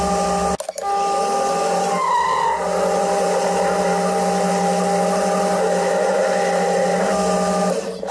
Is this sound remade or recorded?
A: recorded